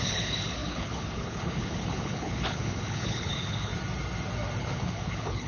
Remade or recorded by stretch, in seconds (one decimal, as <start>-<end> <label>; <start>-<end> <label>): 0.0-3.7 remade; 3.7-4.6 recorded; 4.6-5.5 remade